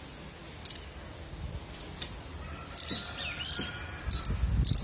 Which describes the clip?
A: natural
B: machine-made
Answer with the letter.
A